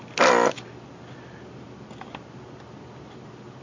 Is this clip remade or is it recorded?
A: recorded